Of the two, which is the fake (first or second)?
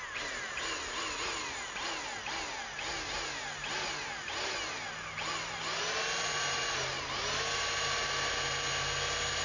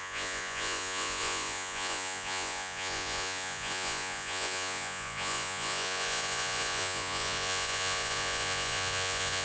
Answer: second